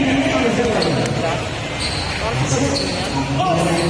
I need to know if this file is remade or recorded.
recorded